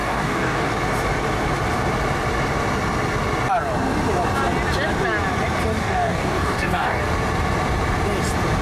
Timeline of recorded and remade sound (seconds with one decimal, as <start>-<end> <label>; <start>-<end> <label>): 0.0-0.7 remade; 0.7-5.8 recorded; 5.8-7.0 remade; 7.0-8.6 recorded

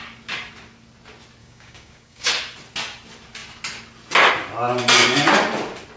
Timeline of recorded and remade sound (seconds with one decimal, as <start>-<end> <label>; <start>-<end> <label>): 0.0-1.4 recorded; 1.4-2.3 remade; 2.3-6.0 recorded

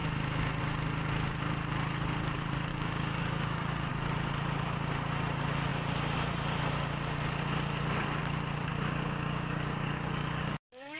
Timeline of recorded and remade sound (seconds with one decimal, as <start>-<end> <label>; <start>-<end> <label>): 0.0-2.7 recorded; 2.7-3.9 remade; 3.9-8.7 recorded; 8.7-11.0 remade

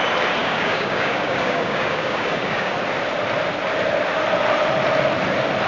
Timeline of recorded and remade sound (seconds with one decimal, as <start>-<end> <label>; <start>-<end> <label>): 0.0-0.4 recorded; 0.4-2.7 remade; 2.7-5.7 recorded